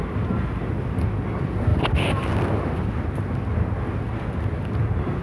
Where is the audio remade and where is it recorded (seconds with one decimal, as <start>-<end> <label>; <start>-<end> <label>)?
0.0-5.2 recorded